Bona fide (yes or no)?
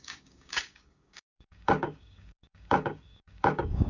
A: no